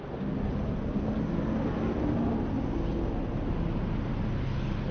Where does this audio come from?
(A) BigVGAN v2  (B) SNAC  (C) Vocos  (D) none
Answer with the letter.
D